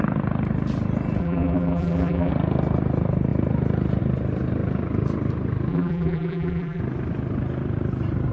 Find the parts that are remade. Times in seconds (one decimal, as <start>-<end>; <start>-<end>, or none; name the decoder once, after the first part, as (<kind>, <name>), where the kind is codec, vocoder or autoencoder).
1.2-2.3 (vocoder, BigVGAN v2); 5.7-6.8